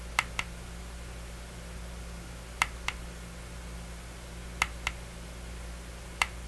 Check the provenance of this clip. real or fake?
real